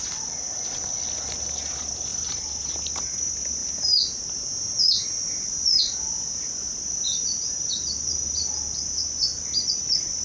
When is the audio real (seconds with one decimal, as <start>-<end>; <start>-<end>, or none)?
0.0-2.1; 2.7-3.6; 7.7-10.2